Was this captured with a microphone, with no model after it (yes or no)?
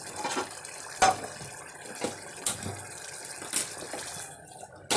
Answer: yes